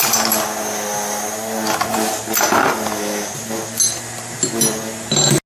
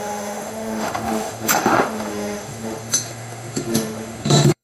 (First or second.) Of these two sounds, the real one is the first